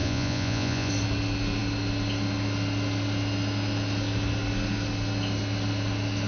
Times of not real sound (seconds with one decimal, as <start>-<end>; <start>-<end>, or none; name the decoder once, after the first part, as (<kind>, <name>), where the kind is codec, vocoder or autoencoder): 0.0-0.9 (vocoder, Vocos)